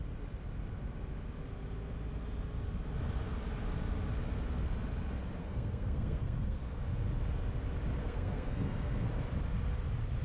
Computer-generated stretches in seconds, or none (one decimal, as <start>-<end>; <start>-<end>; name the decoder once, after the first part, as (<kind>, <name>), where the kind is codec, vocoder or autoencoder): 5.4-6.8 (codec, SNAC); 8.0-9.1

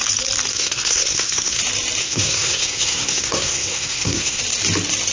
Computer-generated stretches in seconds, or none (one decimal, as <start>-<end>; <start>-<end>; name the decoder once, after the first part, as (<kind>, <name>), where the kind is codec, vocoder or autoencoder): 0.5-1.6 (codec, SNAC); 2.0-4.4

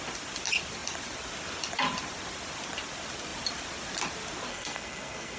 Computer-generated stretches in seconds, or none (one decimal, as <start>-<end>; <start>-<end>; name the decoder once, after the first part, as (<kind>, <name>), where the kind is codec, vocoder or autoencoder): 4.5-5.4 (codec, SNAC)

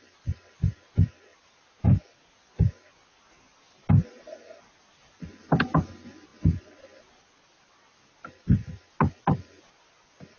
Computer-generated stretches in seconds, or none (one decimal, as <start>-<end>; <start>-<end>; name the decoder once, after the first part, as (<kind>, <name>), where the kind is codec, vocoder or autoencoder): none

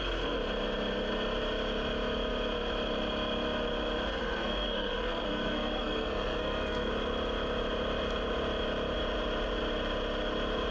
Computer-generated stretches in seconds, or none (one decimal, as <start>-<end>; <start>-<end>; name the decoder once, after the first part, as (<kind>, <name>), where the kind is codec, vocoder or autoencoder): 4.2-6.9 (codec, SNAC)

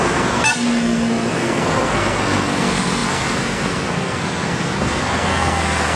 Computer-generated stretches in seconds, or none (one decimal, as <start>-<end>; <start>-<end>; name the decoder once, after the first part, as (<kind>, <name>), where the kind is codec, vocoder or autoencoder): 0.0-6.0 (codec, SNAC)